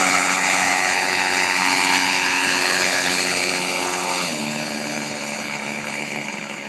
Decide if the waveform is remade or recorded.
remade